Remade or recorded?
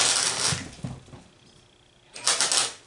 recorded